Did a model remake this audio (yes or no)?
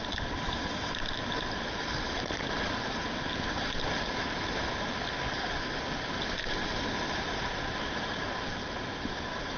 no